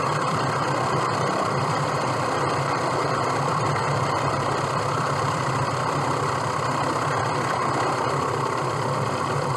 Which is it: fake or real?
fake